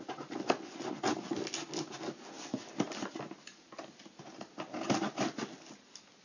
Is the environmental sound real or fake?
real